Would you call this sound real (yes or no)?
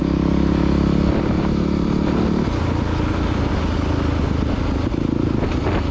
yes